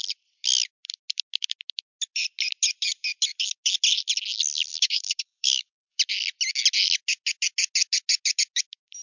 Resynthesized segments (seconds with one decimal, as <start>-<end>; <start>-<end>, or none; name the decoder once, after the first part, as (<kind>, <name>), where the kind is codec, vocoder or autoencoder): 4.7-6.0 (codec, DAC)